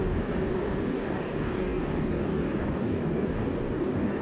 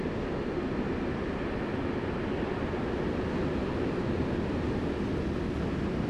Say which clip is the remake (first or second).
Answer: first